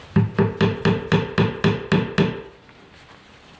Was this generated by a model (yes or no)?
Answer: no